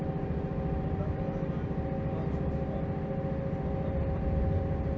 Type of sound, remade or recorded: recorded